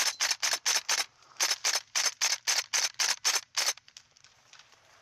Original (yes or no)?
yes